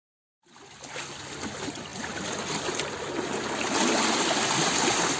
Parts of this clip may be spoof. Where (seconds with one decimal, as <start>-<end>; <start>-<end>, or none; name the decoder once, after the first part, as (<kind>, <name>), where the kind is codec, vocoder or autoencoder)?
none